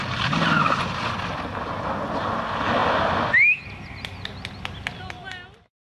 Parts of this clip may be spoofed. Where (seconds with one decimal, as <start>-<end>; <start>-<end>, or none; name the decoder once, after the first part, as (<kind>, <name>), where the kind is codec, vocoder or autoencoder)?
0.0-0.8 (vocoder, BigVGAN v2)